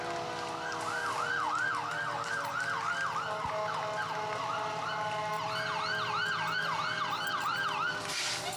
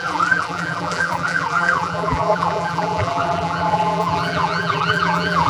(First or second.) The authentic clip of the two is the first